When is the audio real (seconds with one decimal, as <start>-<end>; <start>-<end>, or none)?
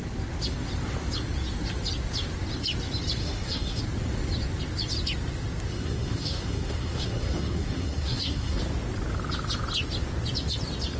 0.0-3.2; 3.8-5.7; 8.6-11.0